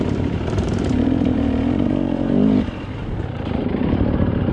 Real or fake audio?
fake